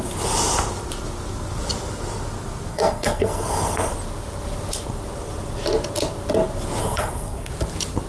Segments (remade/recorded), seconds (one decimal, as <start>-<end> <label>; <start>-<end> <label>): 0.0-2.7 recorded; 2.7-3.9 remade; 3.9-6.8 recorded; 6.8-7.5 remade; 7.5-8.1 recorded